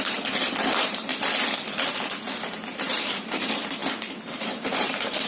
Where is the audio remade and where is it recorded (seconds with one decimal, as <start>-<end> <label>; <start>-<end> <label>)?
0.0-1.1 remade; 1.1-1.9 recorded; 1.9-5.3 remade